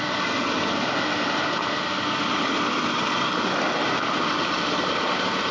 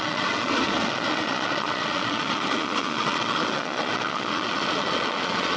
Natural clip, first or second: first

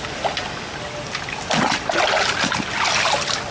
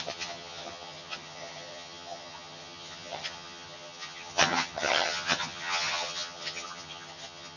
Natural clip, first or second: first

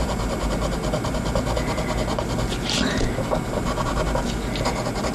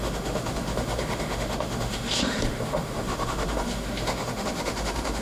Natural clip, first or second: first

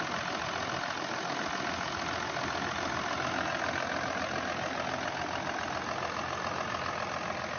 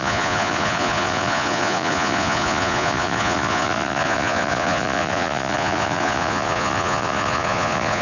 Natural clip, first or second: first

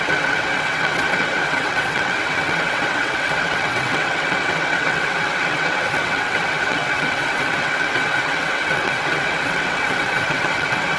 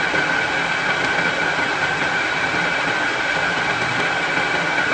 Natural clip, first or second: second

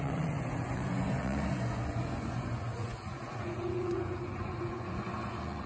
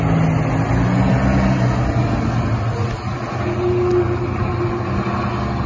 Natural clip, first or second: second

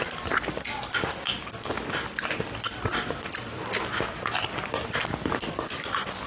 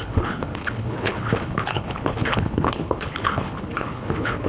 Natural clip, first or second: first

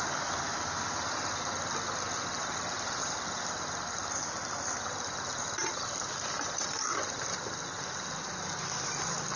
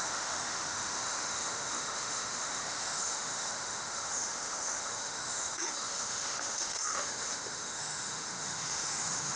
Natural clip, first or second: first